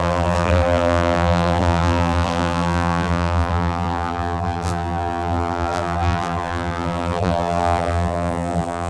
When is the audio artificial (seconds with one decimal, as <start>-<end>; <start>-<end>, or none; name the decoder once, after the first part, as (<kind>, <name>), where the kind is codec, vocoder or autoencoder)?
0.0-8.9 (vocoder, BigVGAN v2)